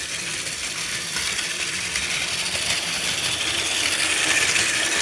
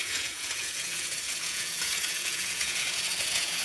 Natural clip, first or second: first